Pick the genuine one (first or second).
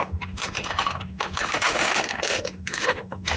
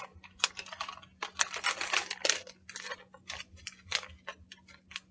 second